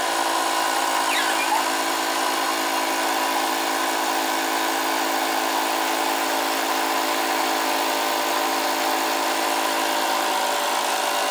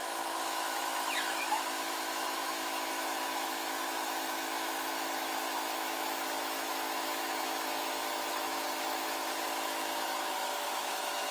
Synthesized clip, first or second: second